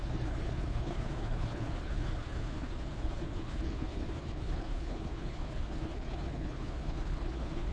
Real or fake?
fake